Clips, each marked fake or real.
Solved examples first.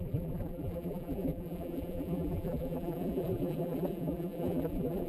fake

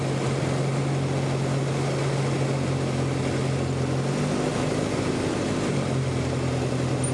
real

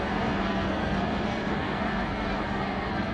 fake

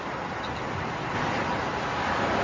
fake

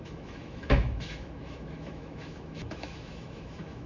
fake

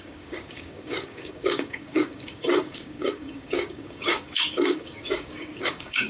fake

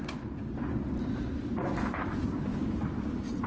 real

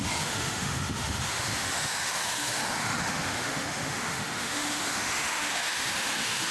fake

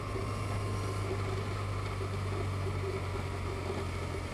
real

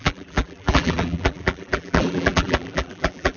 fake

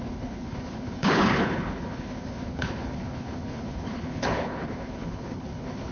fake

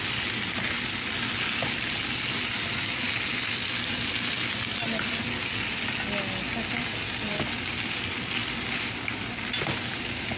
real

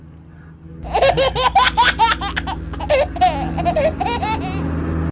real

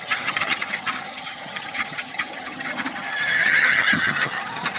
fake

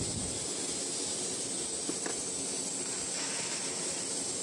real